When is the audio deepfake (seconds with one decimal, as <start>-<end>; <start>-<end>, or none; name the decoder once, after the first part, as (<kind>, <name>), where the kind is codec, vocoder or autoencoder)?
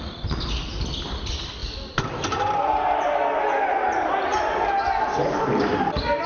none